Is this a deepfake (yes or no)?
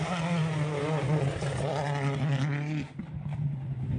no